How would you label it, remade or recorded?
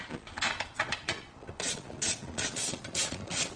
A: remade